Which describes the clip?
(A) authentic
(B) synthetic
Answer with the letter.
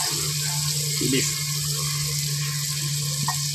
A